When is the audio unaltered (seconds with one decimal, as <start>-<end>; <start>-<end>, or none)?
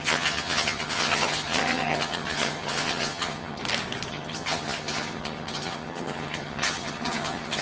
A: 3.6-4.1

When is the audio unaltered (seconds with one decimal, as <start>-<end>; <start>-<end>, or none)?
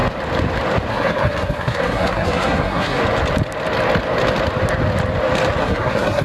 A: 0.0-0.9; 3.0-5.6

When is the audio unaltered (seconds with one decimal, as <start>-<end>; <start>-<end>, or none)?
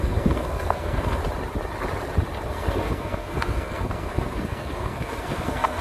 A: 1.2-2.5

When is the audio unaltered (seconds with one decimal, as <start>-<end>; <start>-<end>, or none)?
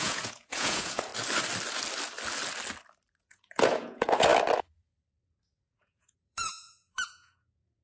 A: 1.1-3.2; 4.3-5.2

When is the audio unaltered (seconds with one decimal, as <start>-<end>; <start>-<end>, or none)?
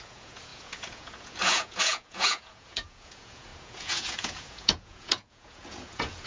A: none